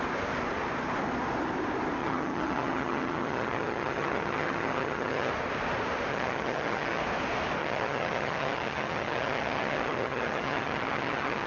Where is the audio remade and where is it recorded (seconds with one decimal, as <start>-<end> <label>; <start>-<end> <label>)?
0.0-2.0 recorded; 2.0-5.3 remade; 5.3-6.1 recorded; 6.1-7.0 remade; 7.0-7.6 recorded; 7.6-11.5 remade